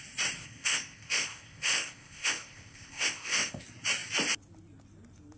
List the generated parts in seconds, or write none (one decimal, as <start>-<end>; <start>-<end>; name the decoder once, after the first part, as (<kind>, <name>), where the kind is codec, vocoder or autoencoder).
0.4-3.6 (codec, ZipCodec)